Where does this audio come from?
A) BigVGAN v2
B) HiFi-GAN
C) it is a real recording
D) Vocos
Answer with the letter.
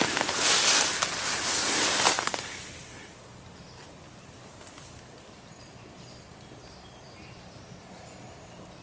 C